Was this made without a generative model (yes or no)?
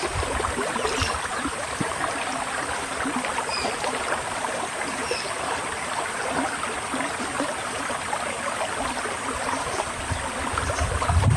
no